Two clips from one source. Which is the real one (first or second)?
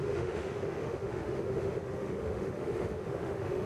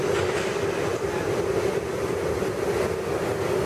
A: second